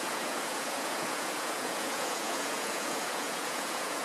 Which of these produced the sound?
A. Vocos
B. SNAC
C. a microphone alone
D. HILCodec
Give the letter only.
A